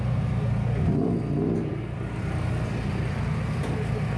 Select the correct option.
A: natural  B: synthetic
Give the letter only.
A